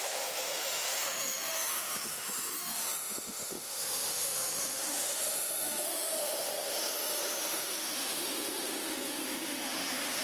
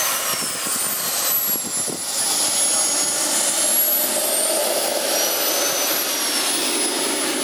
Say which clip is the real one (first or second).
second